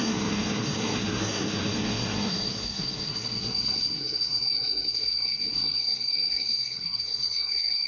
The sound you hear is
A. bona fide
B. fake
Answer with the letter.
B